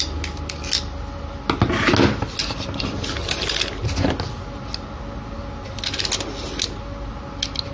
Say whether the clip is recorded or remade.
recorded